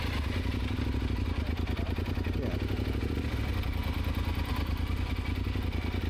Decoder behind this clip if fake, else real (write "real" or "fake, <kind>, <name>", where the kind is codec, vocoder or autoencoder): real